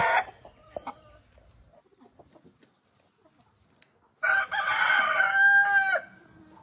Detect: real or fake real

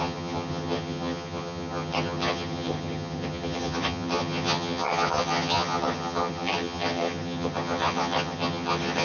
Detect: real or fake fake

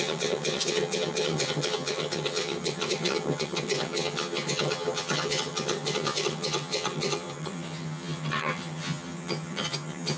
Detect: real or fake fake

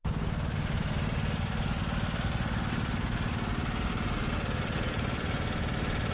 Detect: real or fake real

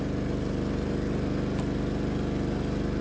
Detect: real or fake real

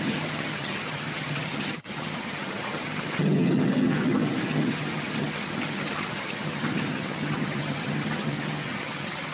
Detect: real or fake fake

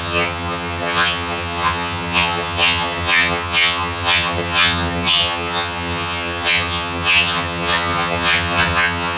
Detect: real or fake fake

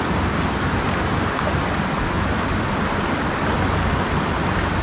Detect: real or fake real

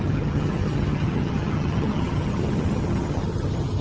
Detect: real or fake fake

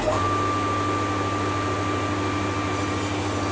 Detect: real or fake real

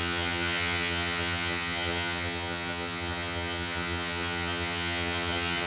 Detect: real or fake fake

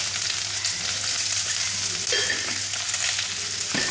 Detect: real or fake real